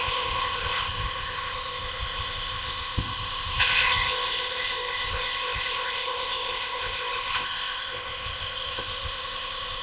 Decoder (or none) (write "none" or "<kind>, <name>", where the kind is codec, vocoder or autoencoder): codec, ZipCodec